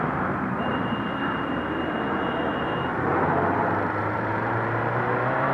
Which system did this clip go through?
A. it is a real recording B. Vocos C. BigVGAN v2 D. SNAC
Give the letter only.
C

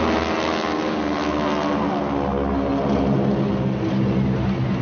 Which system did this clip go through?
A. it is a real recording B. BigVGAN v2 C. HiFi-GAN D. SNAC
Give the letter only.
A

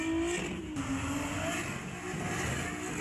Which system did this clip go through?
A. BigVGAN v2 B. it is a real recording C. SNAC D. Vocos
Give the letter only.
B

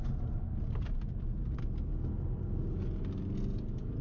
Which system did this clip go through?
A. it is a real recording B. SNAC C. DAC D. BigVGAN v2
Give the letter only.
A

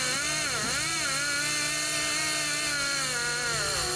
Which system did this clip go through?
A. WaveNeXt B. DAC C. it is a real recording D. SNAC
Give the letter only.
C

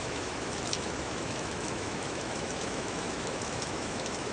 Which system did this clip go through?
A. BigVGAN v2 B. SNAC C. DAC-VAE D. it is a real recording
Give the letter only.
C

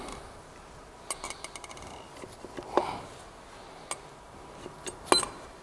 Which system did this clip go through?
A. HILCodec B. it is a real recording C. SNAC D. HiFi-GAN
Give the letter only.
B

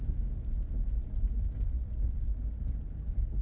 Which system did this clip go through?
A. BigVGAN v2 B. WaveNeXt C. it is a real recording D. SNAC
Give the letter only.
C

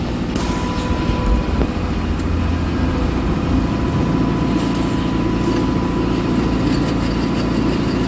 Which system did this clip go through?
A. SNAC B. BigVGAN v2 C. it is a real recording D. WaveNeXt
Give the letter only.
C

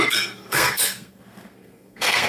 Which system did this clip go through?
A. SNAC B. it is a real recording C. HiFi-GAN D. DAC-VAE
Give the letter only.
A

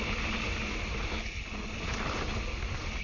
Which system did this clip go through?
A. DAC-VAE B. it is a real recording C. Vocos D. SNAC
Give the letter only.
B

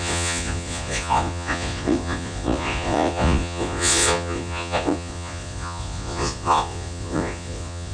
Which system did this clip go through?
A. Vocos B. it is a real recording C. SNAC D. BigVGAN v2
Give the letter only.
A